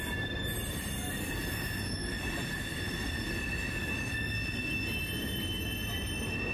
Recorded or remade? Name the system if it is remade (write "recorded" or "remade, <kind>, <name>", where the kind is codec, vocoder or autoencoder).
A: recorded